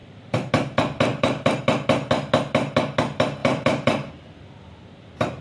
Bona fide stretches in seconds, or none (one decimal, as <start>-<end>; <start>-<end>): 0.5-1.1; 1.6-3.4; 4.1-5.4